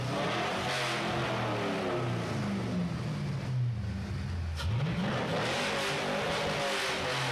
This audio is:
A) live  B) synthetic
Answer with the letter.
A